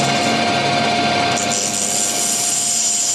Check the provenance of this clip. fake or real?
real